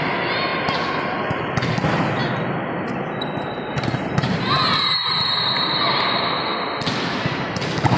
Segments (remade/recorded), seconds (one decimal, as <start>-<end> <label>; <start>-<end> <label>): 0.0-3.7 recorded; 3.7-5.2 remade; 5.2-8.0 recorded